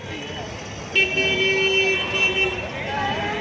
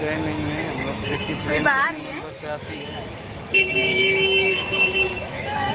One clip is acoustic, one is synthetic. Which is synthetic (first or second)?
second